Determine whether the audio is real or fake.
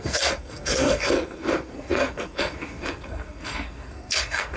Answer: fake